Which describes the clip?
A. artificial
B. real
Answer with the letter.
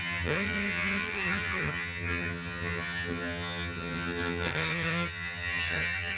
A